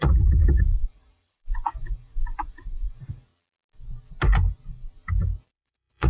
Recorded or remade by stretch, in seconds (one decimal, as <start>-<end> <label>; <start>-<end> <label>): 0.0-3.3 remade; 3.3-5.5 recorded; 5.5-6.1 remade